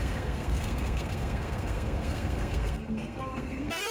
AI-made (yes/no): yes